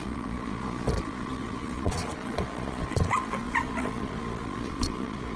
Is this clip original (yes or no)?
no